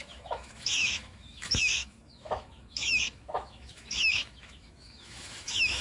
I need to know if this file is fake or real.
fake